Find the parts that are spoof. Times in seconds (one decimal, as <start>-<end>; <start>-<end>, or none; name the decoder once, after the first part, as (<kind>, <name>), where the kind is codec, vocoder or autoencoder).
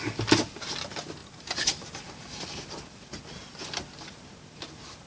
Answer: 1.2-2.0 (vocoder, BigVGAN v2)